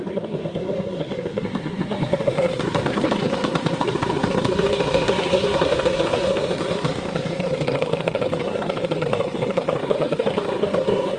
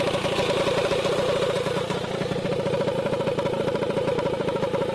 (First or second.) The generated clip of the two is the first